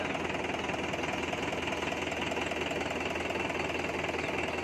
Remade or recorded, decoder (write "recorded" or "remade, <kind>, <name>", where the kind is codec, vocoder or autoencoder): recorded